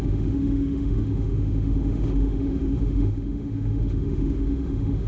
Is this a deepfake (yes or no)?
yes